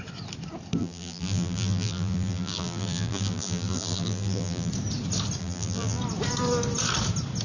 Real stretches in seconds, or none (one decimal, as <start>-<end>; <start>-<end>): 0.0-0.8; 4.7-5.4; 6.0-7.4